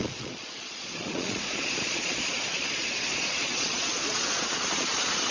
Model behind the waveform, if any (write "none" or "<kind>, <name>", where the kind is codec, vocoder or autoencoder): vocoder, Vocos